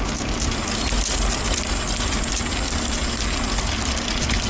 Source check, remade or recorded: recorded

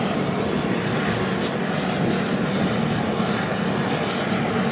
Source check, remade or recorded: recorded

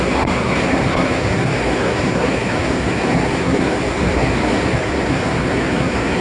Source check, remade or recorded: remade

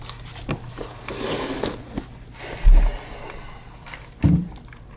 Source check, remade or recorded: recorded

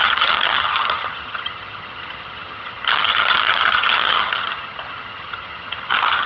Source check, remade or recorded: remade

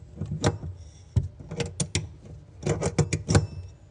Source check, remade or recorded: recorded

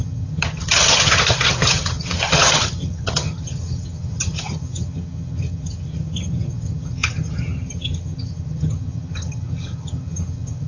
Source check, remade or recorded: remade